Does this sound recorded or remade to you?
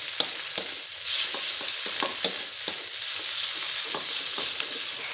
recorded